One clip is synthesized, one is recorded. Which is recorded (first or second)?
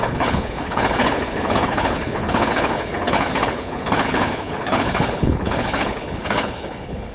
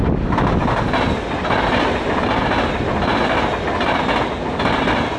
second